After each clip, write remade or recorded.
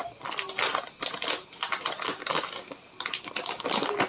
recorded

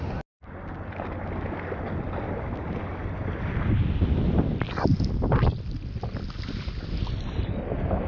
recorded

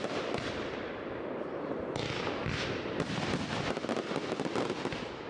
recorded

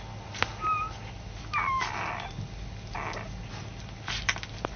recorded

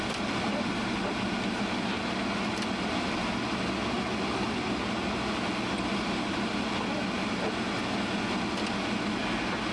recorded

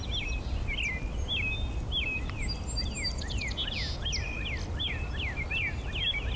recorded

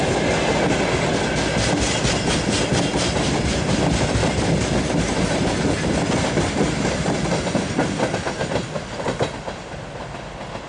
recorded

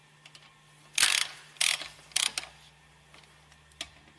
recorded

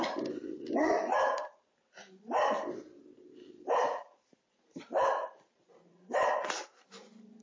remade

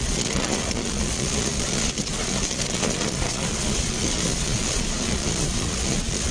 remade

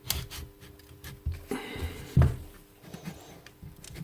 recorded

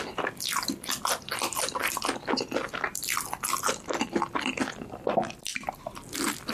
recorded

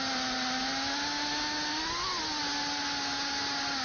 recorded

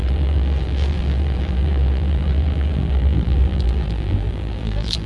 remade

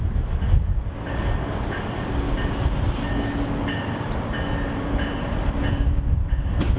recorded